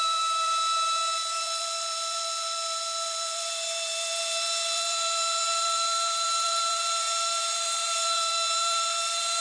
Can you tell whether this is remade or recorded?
remade